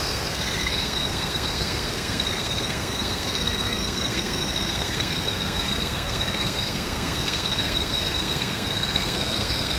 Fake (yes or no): yes